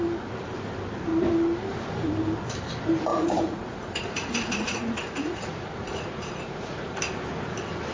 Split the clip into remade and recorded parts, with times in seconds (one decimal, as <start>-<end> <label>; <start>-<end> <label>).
0.0-3.1 recorded; 3.1-7.0 remade; 7.0-7.9 recorded